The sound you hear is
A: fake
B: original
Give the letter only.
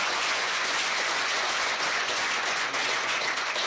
A